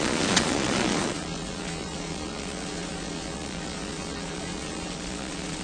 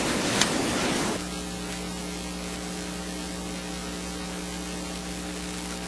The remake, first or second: first